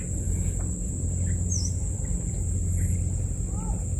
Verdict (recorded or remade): recorded